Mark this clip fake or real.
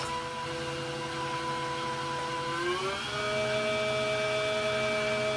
real